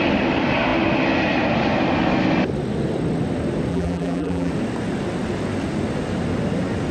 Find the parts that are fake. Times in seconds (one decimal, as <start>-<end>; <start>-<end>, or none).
3.7-4.5